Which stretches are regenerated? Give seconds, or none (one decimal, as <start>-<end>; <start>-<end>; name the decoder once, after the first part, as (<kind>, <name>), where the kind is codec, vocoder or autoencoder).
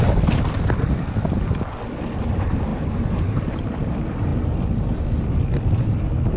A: 2.7-3.2 (vocoder, BigVGAN v2)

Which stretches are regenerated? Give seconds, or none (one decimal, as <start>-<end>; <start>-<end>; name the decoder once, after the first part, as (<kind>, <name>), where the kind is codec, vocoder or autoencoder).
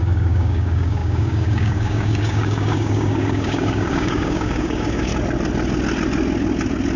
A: 0.0-5.1 (codec, DAC)